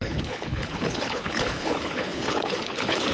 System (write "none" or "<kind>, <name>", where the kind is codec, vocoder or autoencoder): codec, HILCodec